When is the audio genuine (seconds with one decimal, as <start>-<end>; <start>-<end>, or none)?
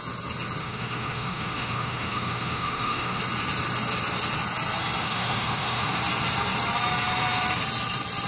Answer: 0.0-0.6; 3.2-5.0; 6.0-8.3